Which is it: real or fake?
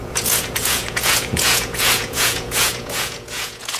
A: fake